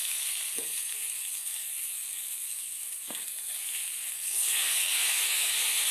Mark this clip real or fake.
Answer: fake